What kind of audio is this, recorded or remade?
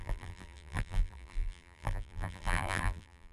remade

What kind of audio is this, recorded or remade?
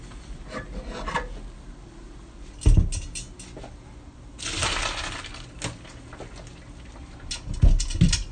recorded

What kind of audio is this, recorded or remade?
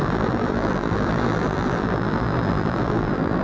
remade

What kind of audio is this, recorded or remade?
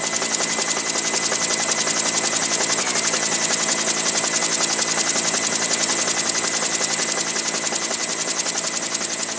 recorded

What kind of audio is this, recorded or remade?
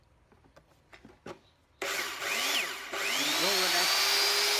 recorded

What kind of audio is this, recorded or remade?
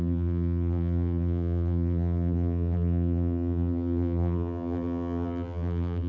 remade